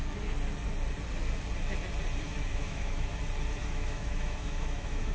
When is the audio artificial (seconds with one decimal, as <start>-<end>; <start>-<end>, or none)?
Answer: 2.5-3.1; 3.6-5.1